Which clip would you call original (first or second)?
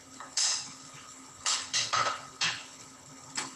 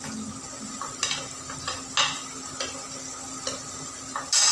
second